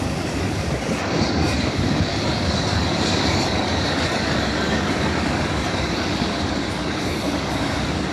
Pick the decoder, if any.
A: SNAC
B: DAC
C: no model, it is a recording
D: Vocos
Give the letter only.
B